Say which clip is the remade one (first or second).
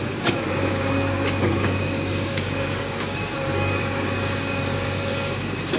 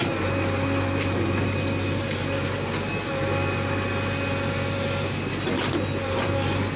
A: first